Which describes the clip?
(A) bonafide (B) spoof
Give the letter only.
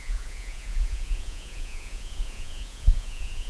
B